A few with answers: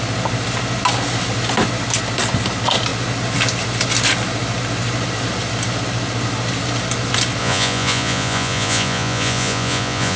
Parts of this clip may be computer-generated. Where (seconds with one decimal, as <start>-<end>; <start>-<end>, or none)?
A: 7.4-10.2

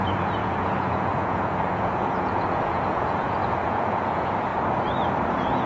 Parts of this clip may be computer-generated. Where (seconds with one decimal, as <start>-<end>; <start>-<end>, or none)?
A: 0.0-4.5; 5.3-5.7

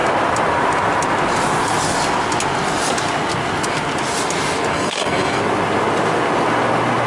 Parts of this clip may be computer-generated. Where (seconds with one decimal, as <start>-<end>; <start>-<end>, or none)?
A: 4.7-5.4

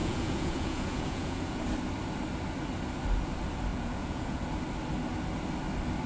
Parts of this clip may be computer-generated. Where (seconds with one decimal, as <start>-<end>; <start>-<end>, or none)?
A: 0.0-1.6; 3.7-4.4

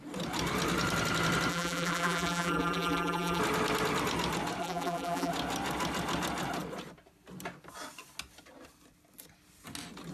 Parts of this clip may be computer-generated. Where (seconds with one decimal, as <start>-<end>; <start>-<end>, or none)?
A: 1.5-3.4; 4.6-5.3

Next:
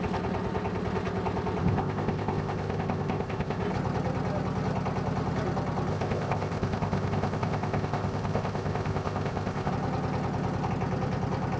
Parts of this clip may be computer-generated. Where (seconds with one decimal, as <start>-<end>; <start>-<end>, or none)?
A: 1.6-3.6; 5.9-9.7